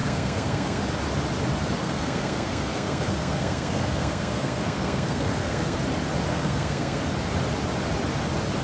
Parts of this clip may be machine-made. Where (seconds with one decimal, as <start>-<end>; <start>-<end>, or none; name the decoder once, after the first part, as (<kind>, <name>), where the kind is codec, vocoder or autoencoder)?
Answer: 0.0-0.8 (codec, SNAC); 1.8-5.8; 6.3-7.0